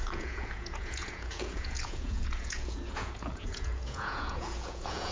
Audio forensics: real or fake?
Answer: fake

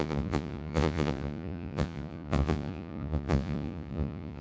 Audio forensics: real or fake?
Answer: fake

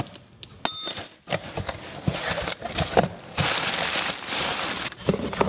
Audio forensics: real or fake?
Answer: real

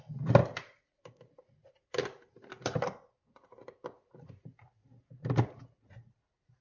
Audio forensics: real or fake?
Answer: real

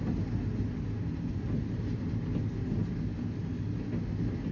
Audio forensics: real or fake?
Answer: real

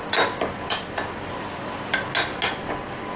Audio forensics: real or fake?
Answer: real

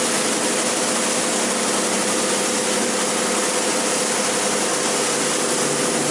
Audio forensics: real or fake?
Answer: real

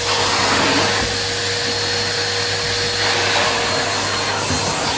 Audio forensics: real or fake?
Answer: real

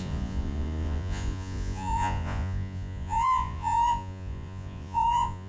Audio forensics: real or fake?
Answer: fake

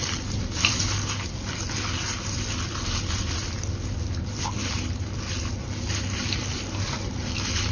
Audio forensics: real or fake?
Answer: real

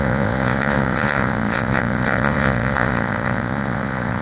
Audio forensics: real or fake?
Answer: fake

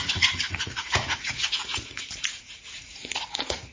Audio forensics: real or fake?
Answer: fake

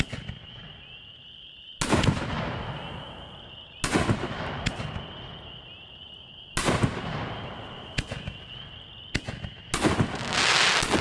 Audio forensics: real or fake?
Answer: real